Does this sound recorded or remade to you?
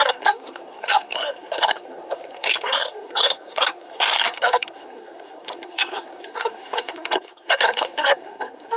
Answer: remade